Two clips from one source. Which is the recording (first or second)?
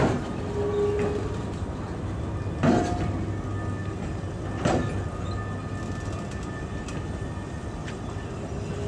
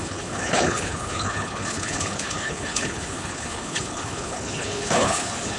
first